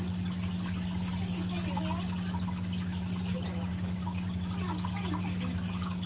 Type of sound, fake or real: real